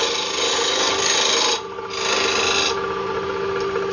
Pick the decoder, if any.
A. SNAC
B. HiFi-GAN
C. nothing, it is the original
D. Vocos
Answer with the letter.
C